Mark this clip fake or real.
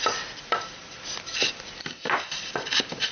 fake